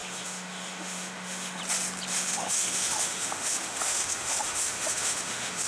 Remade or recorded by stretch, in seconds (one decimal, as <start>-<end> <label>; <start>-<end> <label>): 0.0-1.6 remade; 1.6-2.1 recorded; 2.1-5.7 remade

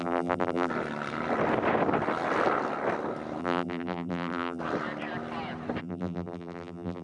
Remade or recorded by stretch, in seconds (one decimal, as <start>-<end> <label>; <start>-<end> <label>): 0.0-0.7 remade; 0.7-3.4 recorded; 3.4-4.6 remade; 4.6-5.8 recorded; 5.8-7.0 remade

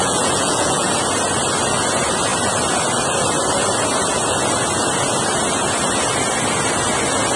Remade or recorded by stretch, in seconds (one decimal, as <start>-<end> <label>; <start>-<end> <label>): 0.0-0.9 remade; 0.9-7.4 recorded

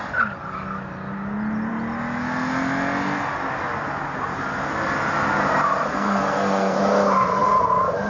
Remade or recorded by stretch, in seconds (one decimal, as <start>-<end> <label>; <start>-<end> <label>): 0.0-5.9 recorded; 5.9-6.8 remade; 6.8-8.1 recorded

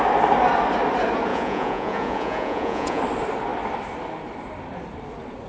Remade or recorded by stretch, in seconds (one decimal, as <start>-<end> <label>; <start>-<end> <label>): 0.0-1.3 recorded; 1.3-3.0 remade; 3.0-5.5 recorded

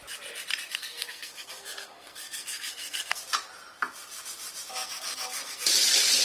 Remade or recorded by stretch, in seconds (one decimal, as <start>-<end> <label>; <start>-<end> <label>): 0.0-0.7 recorded; 0.7-3.2 remade; 3.2-4.7 recorded; 4.7-5.7 remade; 5.7-6.2 recorded